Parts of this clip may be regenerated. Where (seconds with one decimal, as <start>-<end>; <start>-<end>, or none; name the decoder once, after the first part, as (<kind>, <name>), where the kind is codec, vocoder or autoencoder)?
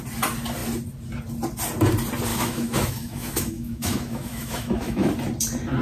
2.3-5.1 (autoencoder, DAC-VAE)